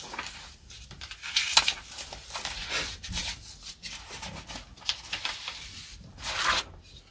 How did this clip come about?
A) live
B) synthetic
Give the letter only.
A